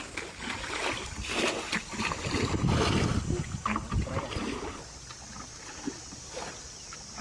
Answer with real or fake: real